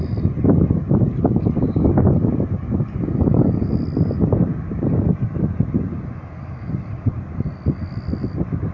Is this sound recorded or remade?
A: recorded